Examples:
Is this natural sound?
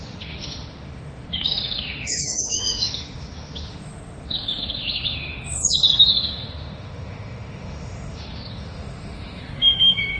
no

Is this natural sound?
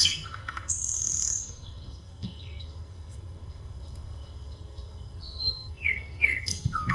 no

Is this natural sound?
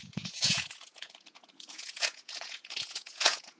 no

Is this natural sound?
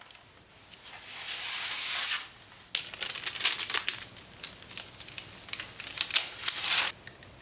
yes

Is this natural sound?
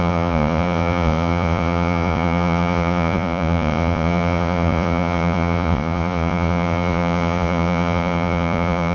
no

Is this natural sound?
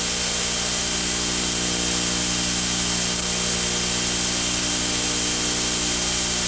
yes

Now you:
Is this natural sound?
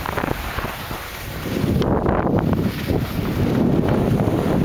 yes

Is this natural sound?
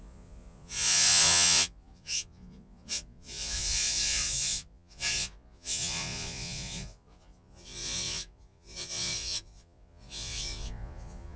no